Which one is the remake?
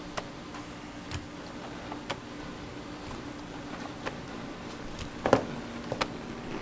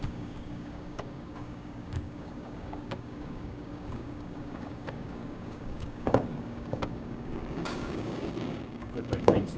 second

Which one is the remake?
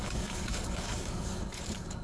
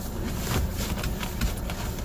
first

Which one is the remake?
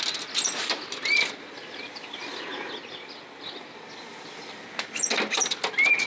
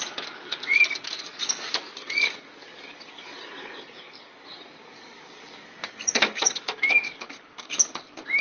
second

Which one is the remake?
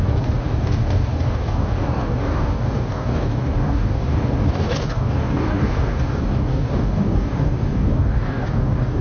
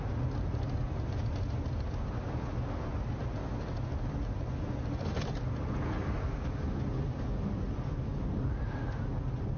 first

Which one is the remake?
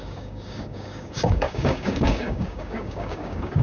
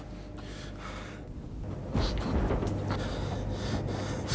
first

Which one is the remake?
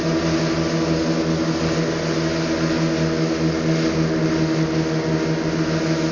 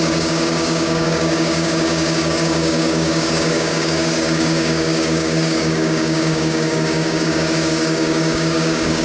second